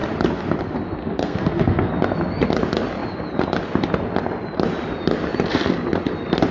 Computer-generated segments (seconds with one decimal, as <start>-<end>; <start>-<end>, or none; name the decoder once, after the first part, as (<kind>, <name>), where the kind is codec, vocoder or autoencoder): 1.0-1.9 (codec, SNAC)

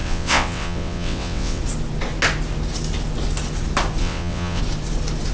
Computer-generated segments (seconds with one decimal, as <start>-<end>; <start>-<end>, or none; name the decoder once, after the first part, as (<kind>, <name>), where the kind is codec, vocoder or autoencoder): 0.0-1.6 (vocoder, WaveNeXt); 4.0-4.6

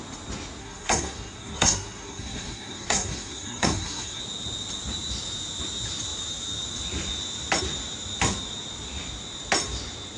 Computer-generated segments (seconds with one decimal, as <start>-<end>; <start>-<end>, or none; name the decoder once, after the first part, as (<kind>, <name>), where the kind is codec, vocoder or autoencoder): 0.6-4.2 (codec, SNAC)

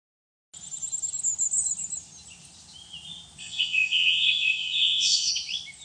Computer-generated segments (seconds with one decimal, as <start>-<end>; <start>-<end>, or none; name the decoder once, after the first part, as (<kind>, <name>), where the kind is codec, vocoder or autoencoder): 3.4-5.3 (vocoder, WaveNeXt)

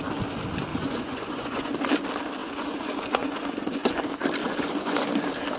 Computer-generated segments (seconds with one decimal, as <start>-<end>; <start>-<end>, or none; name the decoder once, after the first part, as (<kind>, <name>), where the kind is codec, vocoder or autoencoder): 0.7-1.7 (vocoder, Vocos); 2.4-3.9; 4.4-5.0

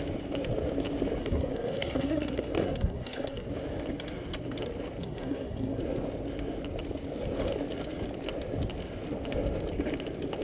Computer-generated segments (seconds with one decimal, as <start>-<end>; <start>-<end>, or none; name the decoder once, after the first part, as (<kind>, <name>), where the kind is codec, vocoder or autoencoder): 1.2-3.5 (codec, SNAC); 5.0-5.8